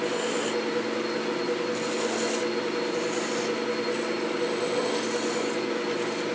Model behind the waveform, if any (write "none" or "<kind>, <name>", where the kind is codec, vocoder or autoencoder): none